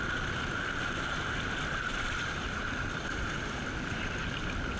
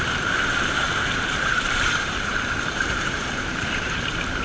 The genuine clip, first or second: first